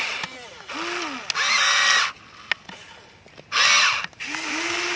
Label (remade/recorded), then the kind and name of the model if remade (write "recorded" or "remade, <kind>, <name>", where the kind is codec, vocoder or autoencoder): recorded